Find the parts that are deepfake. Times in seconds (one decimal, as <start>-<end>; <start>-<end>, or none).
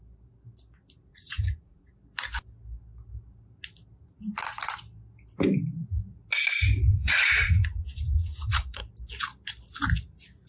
1.1-1.9; 6.9-8.8